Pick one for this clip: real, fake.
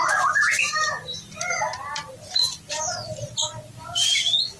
real